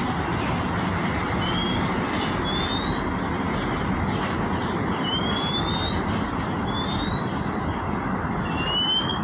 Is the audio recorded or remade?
recorded